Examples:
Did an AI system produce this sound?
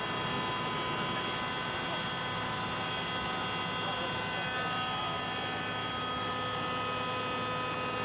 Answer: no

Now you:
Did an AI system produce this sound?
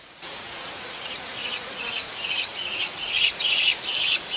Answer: yes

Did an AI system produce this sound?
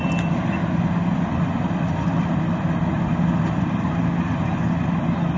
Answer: no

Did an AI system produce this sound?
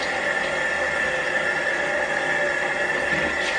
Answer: no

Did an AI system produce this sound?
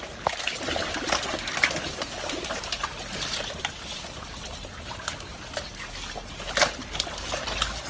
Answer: no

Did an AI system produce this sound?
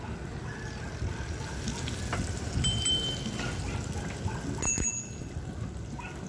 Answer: no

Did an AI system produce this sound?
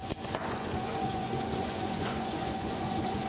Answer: yes